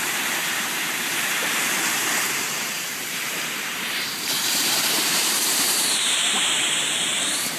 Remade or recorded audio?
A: remade